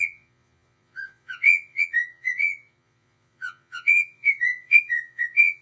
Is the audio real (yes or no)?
no